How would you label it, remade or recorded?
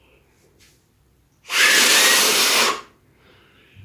recorded